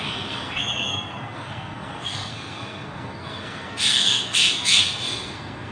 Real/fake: fake